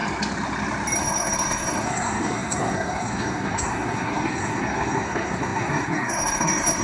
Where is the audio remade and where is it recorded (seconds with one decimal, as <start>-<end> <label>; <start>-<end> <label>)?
0.0-1.0 recorded; 1.0-6.8 remade